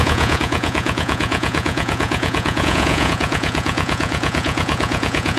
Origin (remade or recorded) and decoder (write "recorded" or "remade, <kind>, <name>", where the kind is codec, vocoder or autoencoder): remade, vocoder, Vocos